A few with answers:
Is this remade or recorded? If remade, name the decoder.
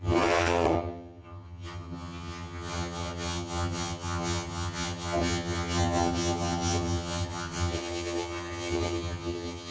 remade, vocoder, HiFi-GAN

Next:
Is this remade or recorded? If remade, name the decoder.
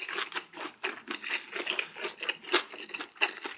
recorded